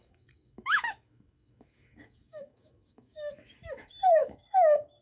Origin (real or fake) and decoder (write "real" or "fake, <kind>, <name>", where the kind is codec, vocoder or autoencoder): fake, autoencoder, DAC-VAE